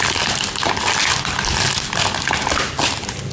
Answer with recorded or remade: recorded